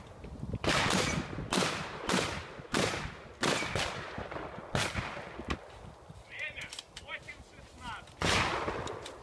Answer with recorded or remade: recorded